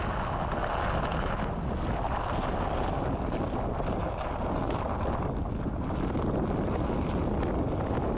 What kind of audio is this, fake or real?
real